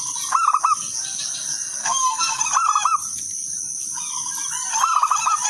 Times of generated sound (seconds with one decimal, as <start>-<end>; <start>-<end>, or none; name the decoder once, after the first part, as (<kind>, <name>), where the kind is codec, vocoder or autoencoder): 1.8-2.4 (codec, SNAC)